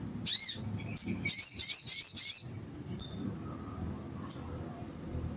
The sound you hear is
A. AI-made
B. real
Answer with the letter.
B